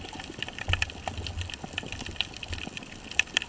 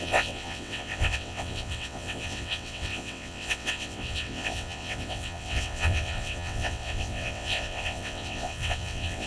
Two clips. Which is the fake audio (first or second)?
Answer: second